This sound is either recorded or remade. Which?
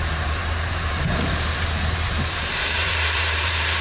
remade